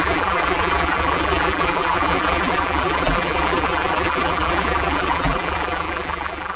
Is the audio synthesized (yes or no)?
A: yes